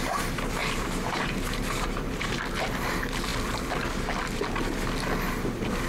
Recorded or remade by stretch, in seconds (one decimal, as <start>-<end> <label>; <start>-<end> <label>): 0.0-0.6 recorded; 0.6-2.4 remade; 2.4-5.9 recorded